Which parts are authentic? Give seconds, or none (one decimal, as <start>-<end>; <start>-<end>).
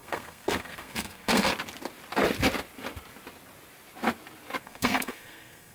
1.5-4.6